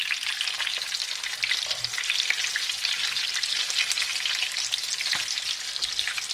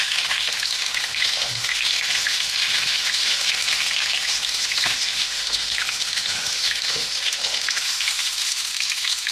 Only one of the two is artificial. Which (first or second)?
second